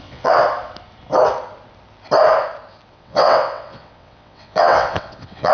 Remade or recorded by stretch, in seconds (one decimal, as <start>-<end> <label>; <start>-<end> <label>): 0.0-0.4 remade; 0.4-2.9 recorded; 2.9-5.5 remade